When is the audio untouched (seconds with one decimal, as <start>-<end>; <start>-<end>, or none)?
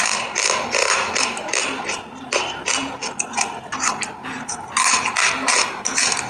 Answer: 0.0-0.8; 1.6-6.3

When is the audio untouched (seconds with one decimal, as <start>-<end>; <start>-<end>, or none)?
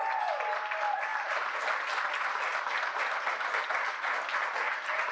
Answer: 0.0-5.1